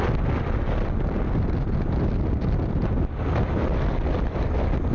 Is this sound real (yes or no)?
no